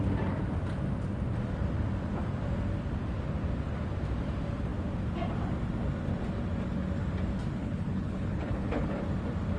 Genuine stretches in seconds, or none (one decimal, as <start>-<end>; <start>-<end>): 0.0-7.6; 9.0-9.6

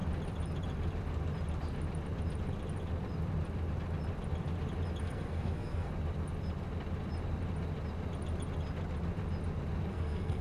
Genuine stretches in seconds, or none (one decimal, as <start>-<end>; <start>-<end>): 0.0-5.0; 5.9-9.9

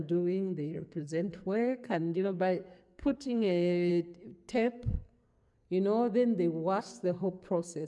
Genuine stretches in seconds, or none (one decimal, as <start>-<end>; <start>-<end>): 3.9-4.5; 5.3-6.8

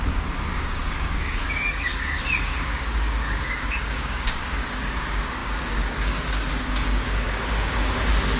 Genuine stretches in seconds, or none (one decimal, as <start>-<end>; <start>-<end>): none

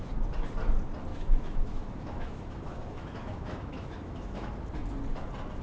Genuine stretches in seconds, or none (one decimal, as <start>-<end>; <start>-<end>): 0.0-1.1; 4.5-5.6

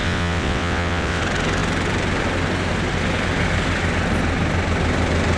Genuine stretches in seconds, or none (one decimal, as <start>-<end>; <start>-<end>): 1.2-5.4